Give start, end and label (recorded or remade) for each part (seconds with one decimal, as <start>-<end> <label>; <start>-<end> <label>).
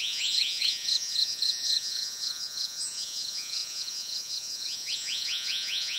0.0-6.0 remade